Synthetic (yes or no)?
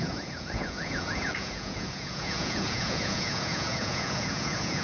yes